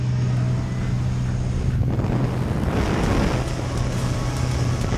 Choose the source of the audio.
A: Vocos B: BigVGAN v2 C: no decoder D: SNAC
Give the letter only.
C